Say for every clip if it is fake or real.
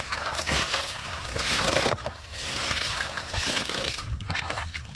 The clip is fake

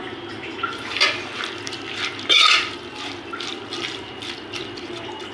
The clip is real